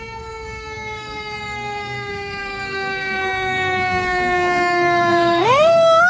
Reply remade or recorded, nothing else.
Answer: remade